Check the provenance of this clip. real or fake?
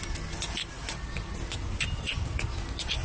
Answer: real